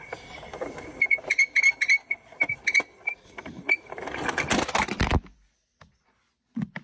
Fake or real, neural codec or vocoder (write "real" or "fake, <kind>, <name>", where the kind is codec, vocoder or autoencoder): real